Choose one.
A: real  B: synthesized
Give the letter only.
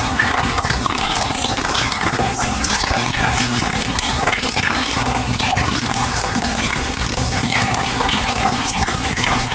B